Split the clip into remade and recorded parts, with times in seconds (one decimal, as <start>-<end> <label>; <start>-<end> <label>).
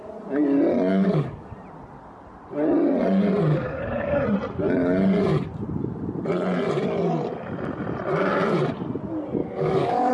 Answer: 0.0-0.9 recorded; 0.9-1.5 remade; 1.5-3.5 recorded; 3.5-4.2 remade; 4.2-9.4 recorded; 9.4-10.1 remade